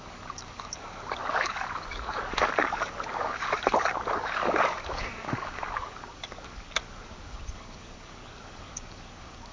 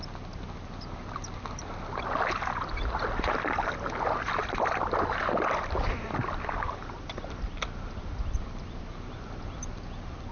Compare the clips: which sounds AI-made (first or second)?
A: first